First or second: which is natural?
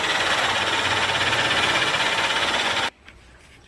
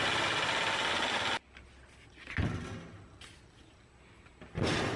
second